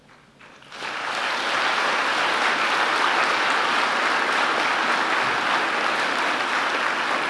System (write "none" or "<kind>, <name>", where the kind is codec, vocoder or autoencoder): none